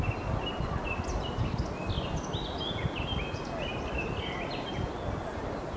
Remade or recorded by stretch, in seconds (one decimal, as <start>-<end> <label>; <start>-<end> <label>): 0.0-5.8 recorded